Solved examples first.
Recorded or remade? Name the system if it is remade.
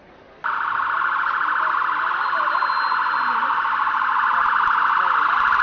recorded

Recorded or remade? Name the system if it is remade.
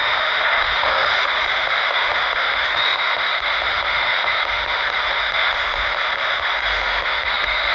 remade, autoencoder, DAC-VAE